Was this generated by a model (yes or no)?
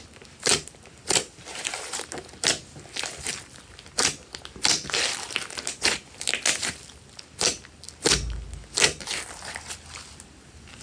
no